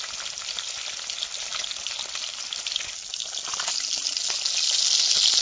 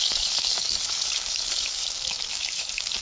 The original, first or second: first